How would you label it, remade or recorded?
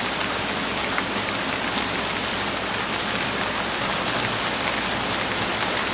recorded